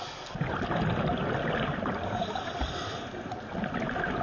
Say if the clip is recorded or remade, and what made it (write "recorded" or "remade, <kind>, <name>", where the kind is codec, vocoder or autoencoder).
recorded